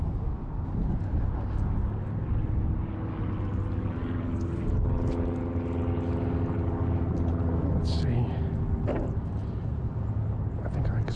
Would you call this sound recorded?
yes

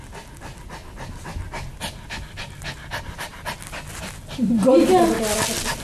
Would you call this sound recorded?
yes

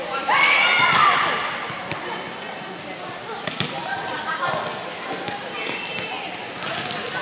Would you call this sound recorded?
yes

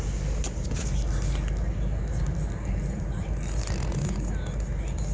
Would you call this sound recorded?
yes